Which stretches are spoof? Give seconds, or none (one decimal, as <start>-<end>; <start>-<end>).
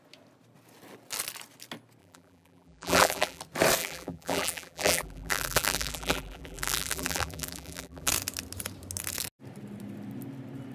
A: 2.0-3.4; 3.8-8.1